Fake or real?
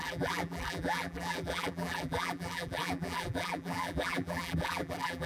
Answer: fake